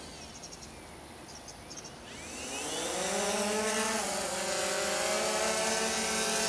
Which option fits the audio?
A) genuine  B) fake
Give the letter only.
A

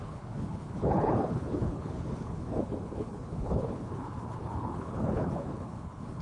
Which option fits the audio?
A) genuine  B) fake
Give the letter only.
B